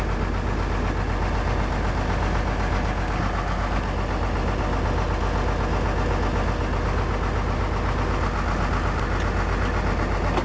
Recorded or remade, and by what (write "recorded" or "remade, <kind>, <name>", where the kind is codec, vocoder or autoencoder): recorded